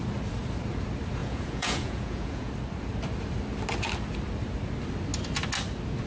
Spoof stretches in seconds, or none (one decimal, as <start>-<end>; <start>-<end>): 1.2-2.5